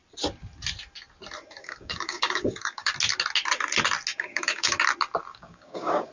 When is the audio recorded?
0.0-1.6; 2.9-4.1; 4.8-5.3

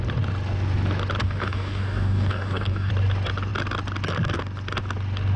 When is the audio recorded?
0.0-1.2; 2.9-5.4

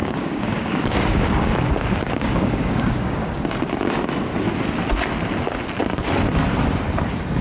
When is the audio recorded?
3.4-7.4

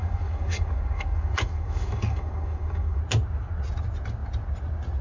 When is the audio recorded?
3.0-5.0

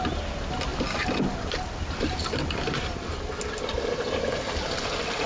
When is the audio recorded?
0.0-5.3

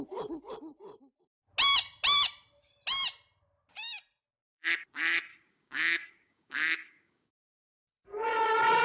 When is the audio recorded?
0.0-5.3; 7.4-8.8

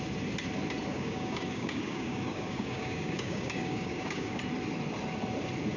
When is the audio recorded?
0.0-0.9; 4.4-5.8

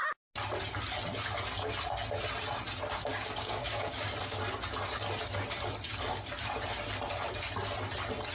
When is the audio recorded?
0.0-3.1; 4.1-8.3